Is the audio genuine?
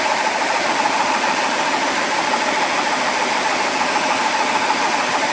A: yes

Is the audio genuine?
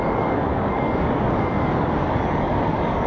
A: no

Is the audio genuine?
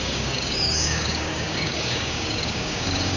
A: no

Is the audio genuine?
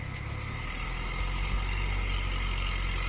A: yes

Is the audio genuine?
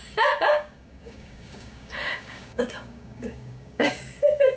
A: no